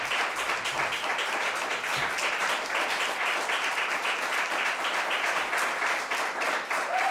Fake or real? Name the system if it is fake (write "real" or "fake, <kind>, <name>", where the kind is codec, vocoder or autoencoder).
fake, vocoder, BigVGAN v2